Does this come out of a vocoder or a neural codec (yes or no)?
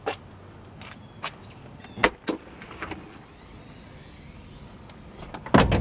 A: no